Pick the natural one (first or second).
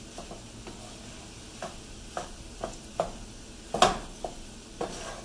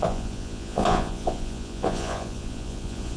first